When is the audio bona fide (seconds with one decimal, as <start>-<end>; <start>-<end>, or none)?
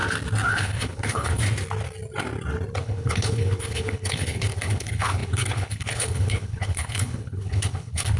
0.0-0.5; 1.4-2.8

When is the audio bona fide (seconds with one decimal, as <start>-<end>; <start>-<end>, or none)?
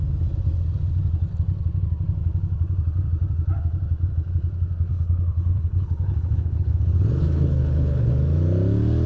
0.0-4.9; 6.8-7.2; 8.1-9.1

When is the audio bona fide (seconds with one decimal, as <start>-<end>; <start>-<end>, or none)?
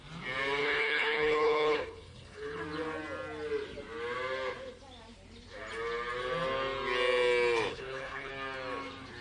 0.0-0.6; 2.6-7.7; 8.3-9.2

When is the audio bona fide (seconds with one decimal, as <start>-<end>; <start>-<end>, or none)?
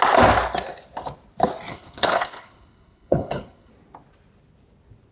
0.0-1.7; 3.7-5.1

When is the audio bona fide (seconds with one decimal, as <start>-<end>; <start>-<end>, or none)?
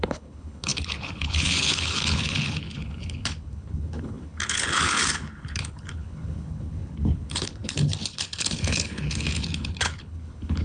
none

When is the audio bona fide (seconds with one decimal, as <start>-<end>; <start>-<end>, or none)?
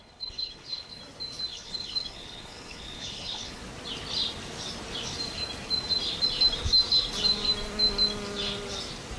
1.0-1.5; 3.6-9.2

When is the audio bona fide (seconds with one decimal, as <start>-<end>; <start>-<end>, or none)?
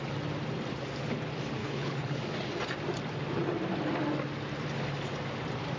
0.0-1.6; 2.2-5.8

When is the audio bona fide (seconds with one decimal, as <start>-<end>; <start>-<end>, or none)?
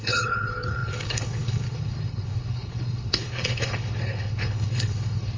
none